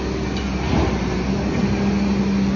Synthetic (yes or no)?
no